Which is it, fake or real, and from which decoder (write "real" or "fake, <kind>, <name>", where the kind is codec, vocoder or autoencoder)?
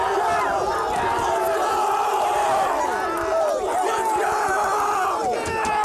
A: real